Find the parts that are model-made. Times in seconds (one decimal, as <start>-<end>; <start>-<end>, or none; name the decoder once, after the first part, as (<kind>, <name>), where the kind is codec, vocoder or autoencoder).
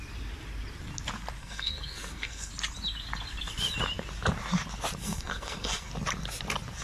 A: 1.4-2.5 (codec, SNAC); 5.0-5.9